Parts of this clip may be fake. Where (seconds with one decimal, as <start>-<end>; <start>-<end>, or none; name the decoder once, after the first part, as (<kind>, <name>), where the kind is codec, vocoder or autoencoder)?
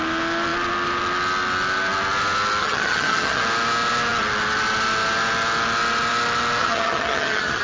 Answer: 2.6-3.4 (vocoder, HiFi-GAN); 6.6-7.6